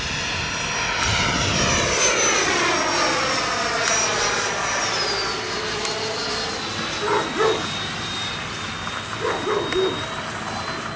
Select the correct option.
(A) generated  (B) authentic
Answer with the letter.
B